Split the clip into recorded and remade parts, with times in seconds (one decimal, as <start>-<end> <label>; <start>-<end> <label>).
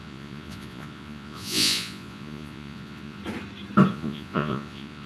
0.0-3.2 remade; 3.2-3.9 recorded; 3.9-5.1 remade